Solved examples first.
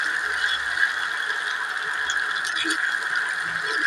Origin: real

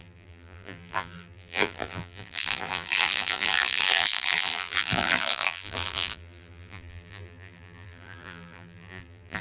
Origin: fake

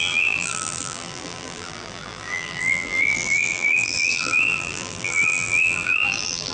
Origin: fake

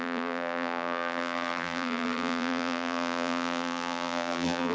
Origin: fake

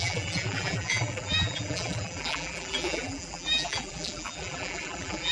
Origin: fake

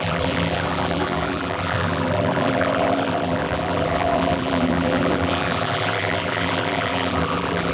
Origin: fake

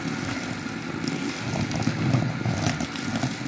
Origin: real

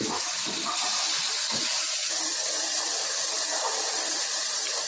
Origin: fake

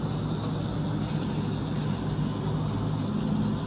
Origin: real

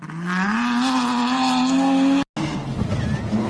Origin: real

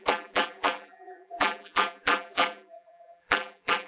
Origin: fake